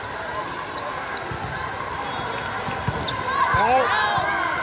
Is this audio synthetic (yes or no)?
no